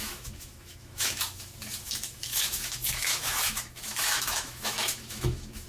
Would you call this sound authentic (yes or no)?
no